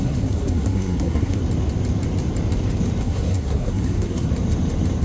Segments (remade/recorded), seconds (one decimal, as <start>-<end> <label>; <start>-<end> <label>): 0.0-1.4 remade; 1.4-3.0 recorded; 3.0-4.3 remade; 4.3-5.0 recorded